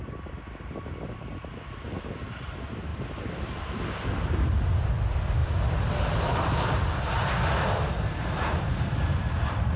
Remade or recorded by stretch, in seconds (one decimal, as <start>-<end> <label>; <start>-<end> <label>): 0.0-2.9 recorded; 2.9-4.0 remade; 4.0-5.4 recorded; 5.4-7.9 remade; 7.9-9.8 recorded